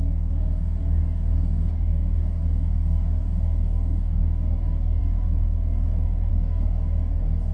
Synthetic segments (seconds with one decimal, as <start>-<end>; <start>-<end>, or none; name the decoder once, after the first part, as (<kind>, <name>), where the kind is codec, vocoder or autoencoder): 0.0-7.5 (codec, DAC)